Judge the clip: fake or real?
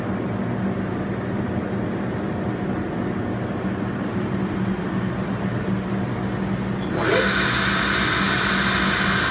real